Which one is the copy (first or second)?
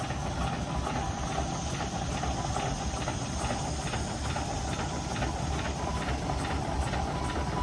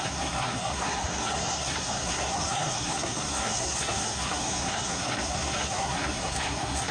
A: second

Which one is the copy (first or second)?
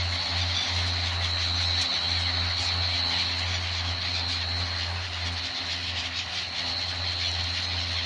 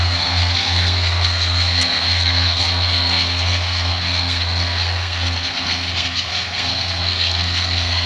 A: second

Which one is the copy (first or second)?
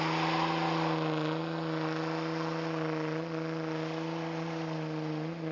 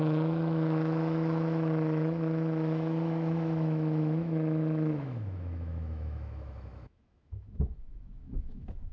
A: second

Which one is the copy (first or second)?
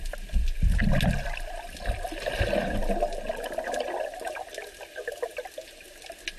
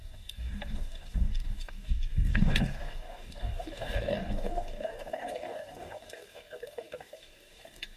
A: second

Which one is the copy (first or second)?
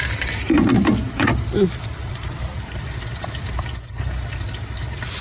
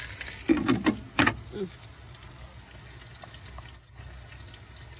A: first